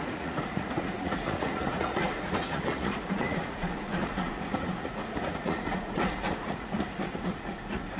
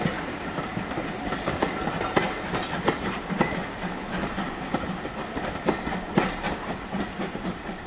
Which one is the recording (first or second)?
second